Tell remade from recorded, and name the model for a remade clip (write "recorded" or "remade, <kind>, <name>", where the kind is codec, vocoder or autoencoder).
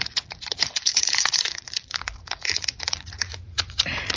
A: remade, vocoder, Vocos